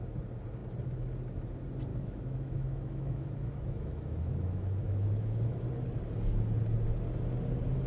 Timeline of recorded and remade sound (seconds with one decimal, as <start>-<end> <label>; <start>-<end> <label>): 0.0-1.9 recorded; 1.9-5.6 remade; 5.6-7.9 recorded